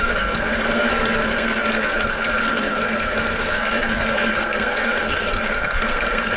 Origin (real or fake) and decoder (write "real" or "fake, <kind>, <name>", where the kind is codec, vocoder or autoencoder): fake, codec, SNAC